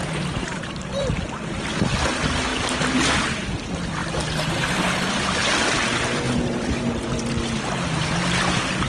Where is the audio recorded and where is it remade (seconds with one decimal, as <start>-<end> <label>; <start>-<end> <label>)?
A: 0.0-1.3 remade; 1.3-8.9 recorded